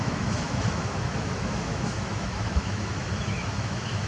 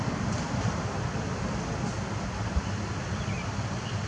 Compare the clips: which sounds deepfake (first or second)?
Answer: first